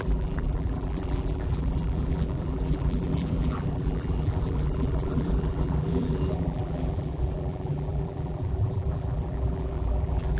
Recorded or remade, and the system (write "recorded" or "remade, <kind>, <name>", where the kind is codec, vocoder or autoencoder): remade, vocoder, BigVGAN v2